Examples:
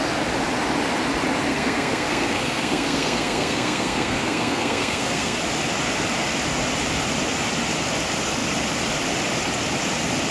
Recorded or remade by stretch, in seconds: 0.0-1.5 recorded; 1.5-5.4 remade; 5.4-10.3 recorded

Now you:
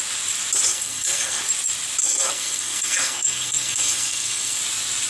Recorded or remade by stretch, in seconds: 0.0-0.7 recorded; 0.7-1.4 remade; 1.4-2.0 recorded; 2.0-4.6 remade; 4.6-5.1 recorded